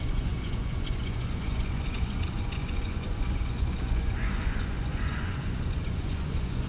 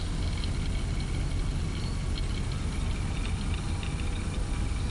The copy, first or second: first